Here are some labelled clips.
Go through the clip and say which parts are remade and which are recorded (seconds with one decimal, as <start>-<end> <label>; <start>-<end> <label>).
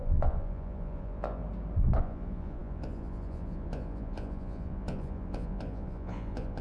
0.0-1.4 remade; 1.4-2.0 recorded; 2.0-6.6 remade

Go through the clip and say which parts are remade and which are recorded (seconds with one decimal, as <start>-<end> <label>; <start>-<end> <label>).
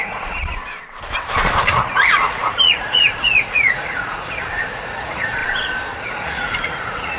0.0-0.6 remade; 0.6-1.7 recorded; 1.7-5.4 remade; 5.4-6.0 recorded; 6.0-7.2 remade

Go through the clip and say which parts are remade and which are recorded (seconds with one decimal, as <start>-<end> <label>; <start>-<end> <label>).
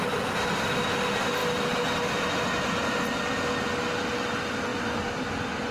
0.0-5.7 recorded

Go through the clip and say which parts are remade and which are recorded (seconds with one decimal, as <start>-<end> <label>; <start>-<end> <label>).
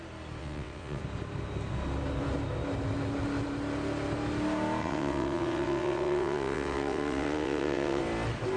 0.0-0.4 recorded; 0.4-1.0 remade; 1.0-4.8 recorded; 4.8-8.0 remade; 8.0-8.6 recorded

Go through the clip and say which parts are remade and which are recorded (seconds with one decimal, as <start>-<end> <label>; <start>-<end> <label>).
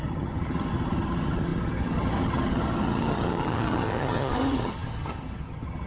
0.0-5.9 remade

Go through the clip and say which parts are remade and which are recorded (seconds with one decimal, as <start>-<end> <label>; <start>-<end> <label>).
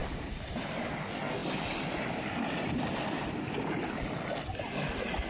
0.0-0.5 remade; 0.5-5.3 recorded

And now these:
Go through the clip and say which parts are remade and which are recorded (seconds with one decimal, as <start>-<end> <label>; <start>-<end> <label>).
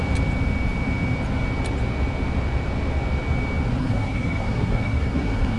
0.0-3.8 recorded; 3.8-5.6 remade